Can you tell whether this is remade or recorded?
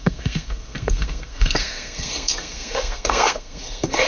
remade